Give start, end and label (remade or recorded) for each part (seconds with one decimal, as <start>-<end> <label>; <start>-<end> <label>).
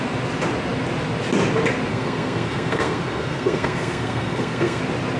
0.0-1.9 recorded; 1.9-4.8 remade; 4.8-5.2 recorded